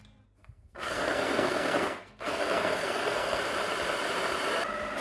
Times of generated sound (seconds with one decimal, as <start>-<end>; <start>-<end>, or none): 0.4-3.4